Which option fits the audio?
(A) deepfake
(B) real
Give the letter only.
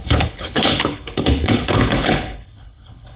A